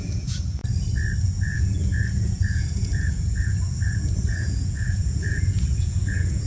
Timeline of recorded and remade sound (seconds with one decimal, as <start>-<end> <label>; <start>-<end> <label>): 0.0-0.6 remade; 0.6-1.2 recorded; 1.2-6.5 remade